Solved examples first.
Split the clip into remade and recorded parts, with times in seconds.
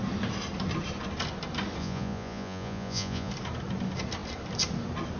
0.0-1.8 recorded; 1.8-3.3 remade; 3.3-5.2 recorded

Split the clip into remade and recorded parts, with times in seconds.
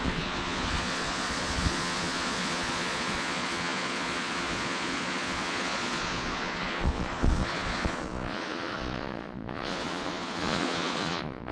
0.0-11.5 remade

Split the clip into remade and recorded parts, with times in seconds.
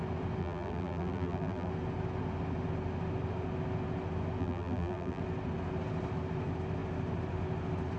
0.0-0.4 recorded; 0.4-1.7 remade; 1.7-4.4 recorded; 4.4-5.2 remade; 5.2-8.0 recorded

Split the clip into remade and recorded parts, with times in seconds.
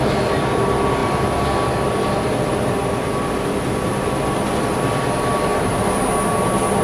0.0-5.5 recorded; 5.5-6.0 remade; 6.0-6.8 recorded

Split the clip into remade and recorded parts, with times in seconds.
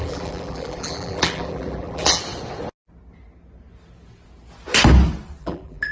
0.0-2.2 remade; 2.2-5.4 recorded; 5.4-5.9 remade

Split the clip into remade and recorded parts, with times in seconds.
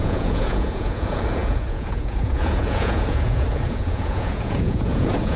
0.0-5.4 remade